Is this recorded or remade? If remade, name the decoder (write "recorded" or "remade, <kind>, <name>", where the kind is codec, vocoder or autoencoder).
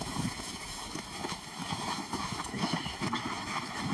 remade, autoencoder, DAC-VAE